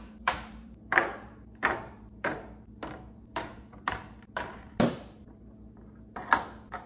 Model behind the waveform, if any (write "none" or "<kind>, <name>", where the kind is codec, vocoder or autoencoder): vocoder, BigVGAN v2